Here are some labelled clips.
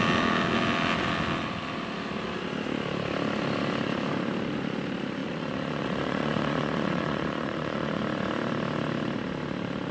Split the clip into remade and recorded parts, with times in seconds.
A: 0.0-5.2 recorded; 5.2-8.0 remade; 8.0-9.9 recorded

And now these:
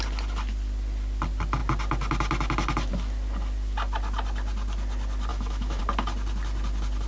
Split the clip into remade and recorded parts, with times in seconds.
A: 0.0-5.3 recorded; 5.3-5.8 remade; 5.8-7.1 recorded